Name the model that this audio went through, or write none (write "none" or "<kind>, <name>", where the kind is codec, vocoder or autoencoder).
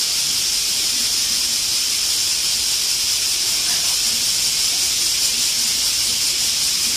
none